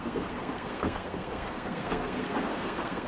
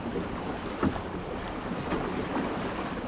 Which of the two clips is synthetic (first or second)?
first